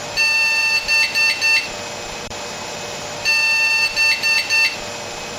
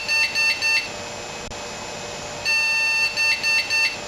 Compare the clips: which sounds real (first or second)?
second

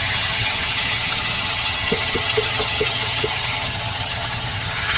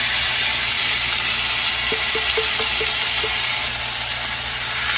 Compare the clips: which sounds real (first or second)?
second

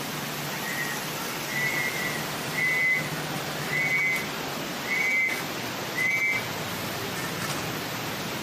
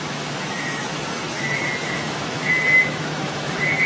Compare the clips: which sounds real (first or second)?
first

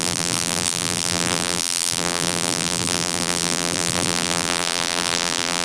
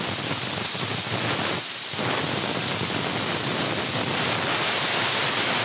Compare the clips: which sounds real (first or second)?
second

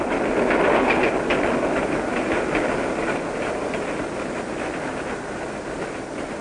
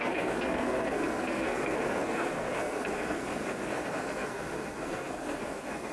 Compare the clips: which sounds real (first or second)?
first